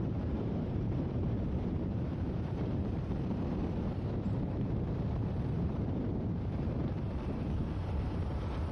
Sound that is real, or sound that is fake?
fake